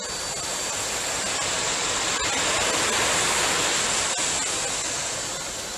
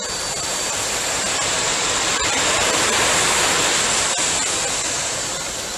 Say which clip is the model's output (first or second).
second